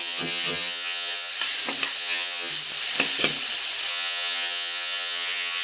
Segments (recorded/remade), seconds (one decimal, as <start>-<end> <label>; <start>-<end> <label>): 0.0-1.3 remade; 1.3-2.0 recorded; 2.0-2.5 remade; 2.5-3.9 recorded; 3.9-5.6 remade